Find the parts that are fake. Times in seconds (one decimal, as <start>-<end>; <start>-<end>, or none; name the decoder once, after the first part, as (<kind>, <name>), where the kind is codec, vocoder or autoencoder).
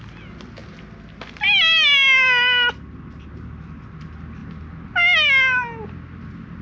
none